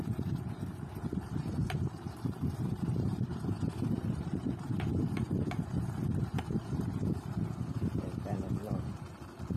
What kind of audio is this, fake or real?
fake